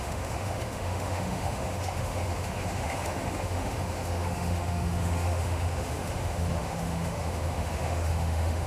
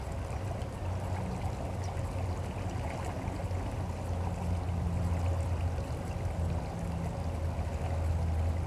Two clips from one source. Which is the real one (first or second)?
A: second